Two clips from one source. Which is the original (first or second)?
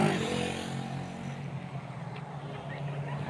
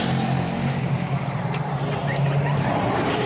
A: first